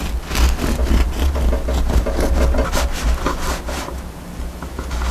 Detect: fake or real real